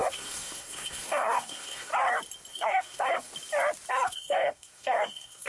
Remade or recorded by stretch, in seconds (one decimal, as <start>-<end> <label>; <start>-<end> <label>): 0.0-1.9 remade; 1.9-2.5 recorded; 2.5-3.3 remade; 3.3-3.9 recorded; 3.9-5.5 remade

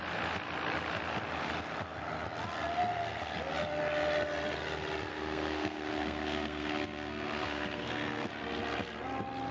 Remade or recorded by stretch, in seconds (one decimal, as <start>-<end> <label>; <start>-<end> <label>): 0.0-5.1 recorded; 5.1-8.3 remade; 8.3-9.5 recorded

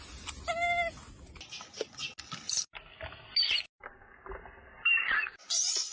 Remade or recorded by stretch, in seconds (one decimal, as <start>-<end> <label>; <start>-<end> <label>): 0.0-5.9 recorded

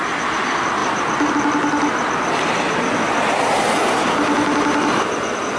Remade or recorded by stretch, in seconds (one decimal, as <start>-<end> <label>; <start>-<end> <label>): 0.0-5.6 recorded

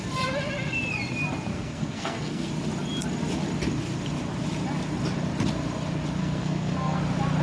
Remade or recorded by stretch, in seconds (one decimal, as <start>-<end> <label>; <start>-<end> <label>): 0.0-1.5 recorded; 1.5-2.5 remade; 2.5-6.2 recorded; 6.2-7.0 remade; 7.0-7.4 recorded

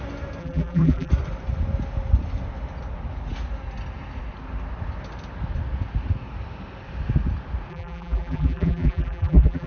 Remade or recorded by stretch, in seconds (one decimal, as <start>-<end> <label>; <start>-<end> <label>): 0.0-0.4 recorded; 0.4-1.1 remade; 1.1-7.7 recorded; 7.7-9.7 remade

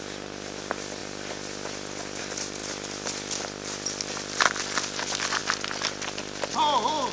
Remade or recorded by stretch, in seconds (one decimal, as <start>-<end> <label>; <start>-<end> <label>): 0.0-7.1 recorded

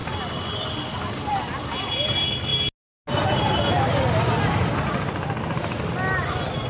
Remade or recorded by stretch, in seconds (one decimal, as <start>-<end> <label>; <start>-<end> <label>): 0.0-6.7 recorded